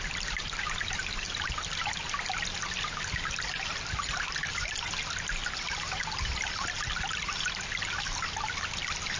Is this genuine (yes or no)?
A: yes